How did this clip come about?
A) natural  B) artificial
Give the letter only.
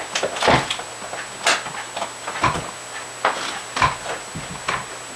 A